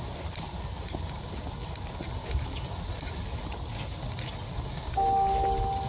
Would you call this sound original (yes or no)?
yes